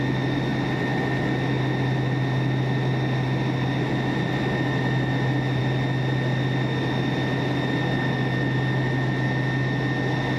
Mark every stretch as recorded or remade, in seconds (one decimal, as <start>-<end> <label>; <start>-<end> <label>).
0.0-10.4 recorded